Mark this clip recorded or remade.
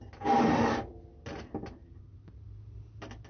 recorded